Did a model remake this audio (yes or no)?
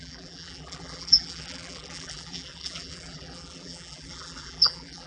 yes